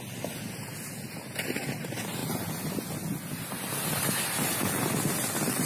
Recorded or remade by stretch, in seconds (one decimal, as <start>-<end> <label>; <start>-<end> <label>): 0.0-5.7 recorded